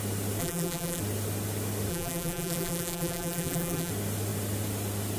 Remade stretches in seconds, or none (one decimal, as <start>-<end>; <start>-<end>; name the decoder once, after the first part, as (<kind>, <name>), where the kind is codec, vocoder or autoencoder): 0.4-1.0 (vocoder, BigVGAN v2); 1.9-3.9